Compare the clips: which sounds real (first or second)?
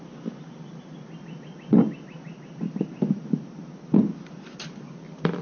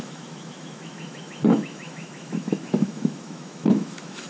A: first